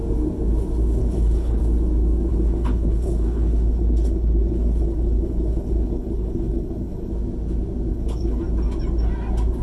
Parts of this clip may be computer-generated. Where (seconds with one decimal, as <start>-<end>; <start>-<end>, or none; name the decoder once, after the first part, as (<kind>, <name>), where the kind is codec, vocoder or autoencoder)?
1.0-1.6 (codec, HILCodec); 2.3-7.1; 7.9-8.4